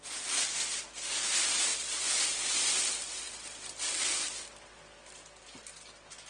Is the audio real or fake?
real